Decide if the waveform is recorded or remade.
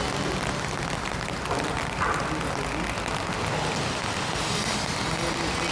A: recorded